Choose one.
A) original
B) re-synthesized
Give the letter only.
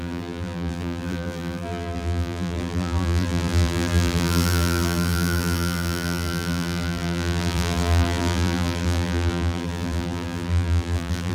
B